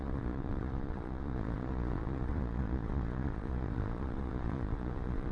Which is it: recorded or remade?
remade